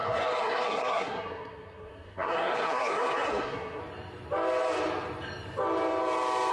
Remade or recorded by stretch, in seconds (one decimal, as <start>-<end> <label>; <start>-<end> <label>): 0.0-3.8 remade; 3.8-6.5 recorded